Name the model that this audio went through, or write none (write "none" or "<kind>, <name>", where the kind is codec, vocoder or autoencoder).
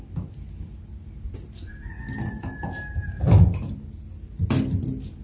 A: none